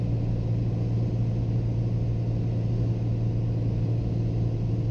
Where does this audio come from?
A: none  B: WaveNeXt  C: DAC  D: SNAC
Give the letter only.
A